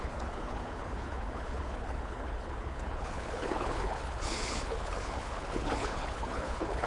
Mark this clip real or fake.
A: fake